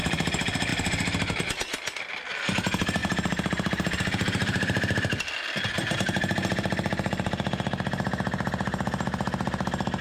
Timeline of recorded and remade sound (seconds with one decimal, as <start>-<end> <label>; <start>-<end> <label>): 0.0-3.0 recorded; 3.0-5.2 remade; 5.2-10.0 recorded